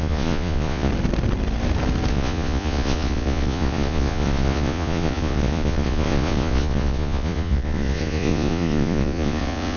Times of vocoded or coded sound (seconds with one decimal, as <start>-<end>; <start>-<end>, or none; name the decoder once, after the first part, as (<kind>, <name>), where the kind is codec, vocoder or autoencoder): 0.0-0.9 (vocoder, Vocos); 2.1-9.8